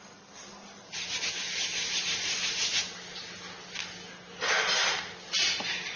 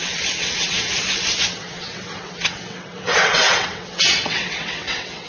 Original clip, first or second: first